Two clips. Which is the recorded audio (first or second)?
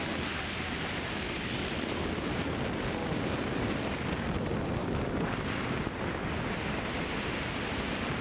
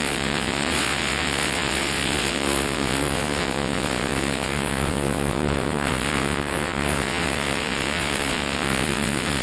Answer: first